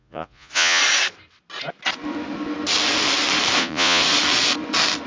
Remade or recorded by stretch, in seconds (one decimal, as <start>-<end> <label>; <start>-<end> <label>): 0.0-0.8 remade; 0.8-3.6 recorded; 3.6-4.0 remade; 4.0-5.1 recorded

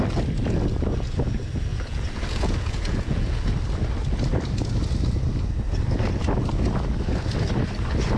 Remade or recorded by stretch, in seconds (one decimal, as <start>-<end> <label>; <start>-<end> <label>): 0.0-1.7 recorded; 1.7-3.5 remade; 3.5-8.2 recorded

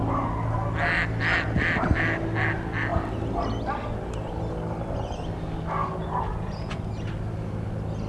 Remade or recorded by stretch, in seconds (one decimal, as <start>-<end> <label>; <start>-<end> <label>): 0.0-5.8 recorded; 5.8-6.8 remade; 6.8-8.1 recorded

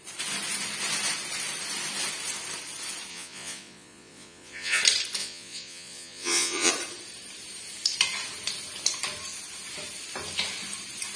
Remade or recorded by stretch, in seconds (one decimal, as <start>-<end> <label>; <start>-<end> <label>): 0.0-3.1 recorded; 3.1-4.8 remade; 4.8-5.2 recorded; 5.2-6.7 remade; 6.7-11.2 recorded

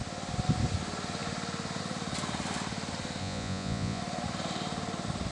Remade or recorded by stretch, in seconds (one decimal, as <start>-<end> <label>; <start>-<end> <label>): 0.0-3.2 recorded; 3.2-4.0 remade; 4.0-5.3 recorded

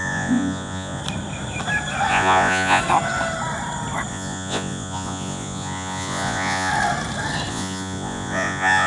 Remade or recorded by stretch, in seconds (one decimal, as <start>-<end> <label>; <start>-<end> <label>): 0.0-1.0 remade; 1.0-2.1 recorded; 2.1-2.8 remade; 2.8-4.1 recorded; 4.1-6.7 remade; 6.7-7.5 recorded; 7.5-8.9 remade

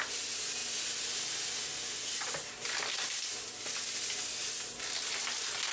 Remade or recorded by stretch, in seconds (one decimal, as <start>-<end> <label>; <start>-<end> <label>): 0.0-5.7 recorded